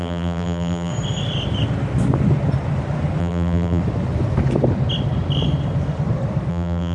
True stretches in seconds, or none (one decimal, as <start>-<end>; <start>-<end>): 0.9-3.2; 3.8-6.5